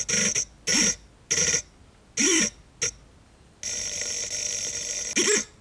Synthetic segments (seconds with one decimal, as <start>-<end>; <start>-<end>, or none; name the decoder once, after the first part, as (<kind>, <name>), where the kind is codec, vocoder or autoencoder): none